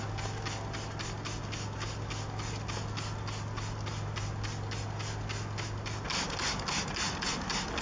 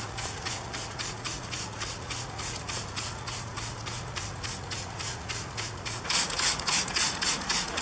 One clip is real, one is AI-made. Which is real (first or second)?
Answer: first